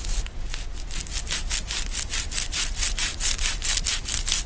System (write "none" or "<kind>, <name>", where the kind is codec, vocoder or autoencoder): none